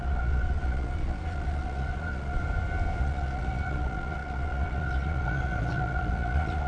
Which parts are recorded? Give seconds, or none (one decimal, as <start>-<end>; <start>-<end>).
2.4-3.0